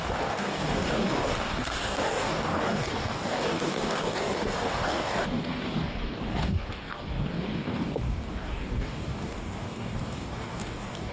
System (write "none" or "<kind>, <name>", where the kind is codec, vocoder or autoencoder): codec, DAC